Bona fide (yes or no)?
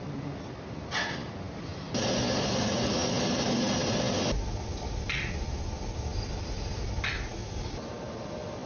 yes